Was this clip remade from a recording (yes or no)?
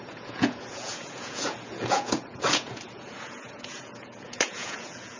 yes